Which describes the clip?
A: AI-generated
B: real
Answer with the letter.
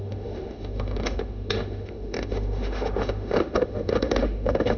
A